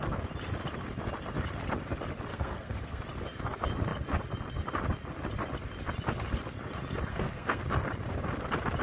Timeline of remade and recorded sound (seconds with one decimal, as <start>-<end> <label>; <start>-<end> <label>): 0.0-2.3 recorded; 2.3-3.0 remade; 3.0-7.1 recorded; 7.1-7.6 remade; 7.6-8.8 recorded